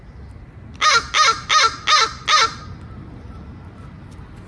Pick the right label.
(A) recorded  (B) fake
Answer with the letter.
A